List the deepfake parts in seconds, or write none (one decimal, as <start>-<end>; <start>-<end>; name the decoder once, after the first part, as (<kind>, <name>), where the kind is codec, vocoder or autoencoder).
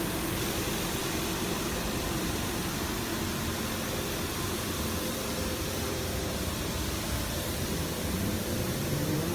0.0-3.1 (vocoder, BigVGAN v2); 4.3-9.3